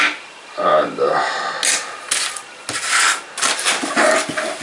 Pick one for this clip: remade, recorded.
recorded